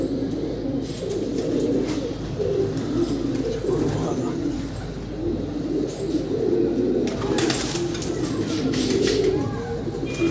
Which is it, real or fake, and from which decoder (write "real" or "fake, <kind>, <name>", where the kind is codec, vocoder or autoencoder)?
real